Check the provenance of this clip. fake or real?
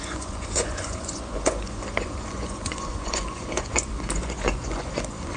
fake